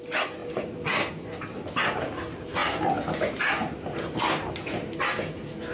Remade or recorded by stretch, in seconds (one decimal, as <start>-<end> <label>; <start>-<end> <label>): 0.0-0.4 recorded; 0.4-1.1 remade; 1.1-2.6 recorded; 2.6-4.2 remade; 4.2-5.7 recorded